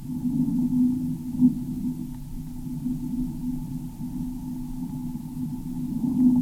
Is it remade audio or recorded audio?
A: recorded